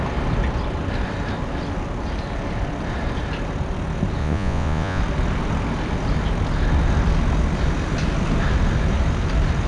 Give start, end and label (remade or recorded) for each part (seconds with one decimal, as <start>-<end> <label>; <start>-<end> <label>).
0.0-4.2 recorded; 4.2-5.0 remade; 5.0-9.7 recorded